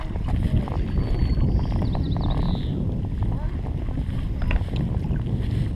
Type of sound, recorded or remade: recorded